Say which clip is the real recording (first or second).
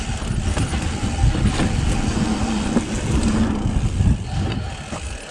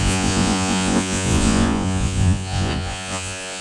first